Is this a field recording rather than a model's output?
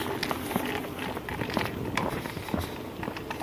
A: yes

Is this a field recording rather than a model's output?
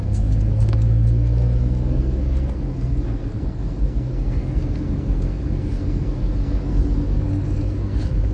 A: no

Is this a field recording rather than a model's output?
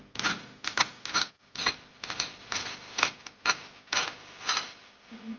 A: yes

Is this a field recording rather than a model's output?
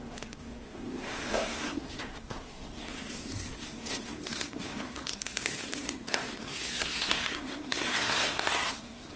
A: no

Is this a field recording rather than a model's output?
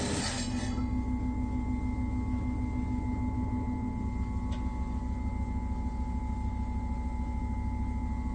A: yes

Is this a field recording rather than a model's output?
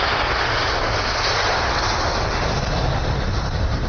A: yes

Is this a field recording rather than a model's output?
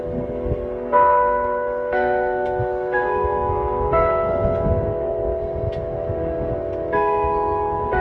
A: no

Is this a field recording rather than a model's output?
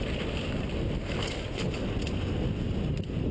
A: yes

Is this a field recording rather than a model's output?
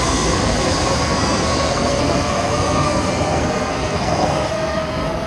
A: no